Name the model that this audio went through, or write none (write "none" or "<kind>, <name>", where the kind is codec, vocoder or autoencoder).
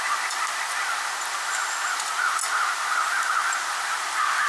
none